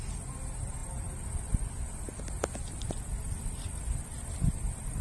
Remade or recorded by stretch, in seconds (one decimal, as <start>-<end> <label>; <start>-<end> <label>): 0.0-5.0 recorded